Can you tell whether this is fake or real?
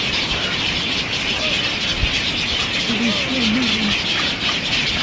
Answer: real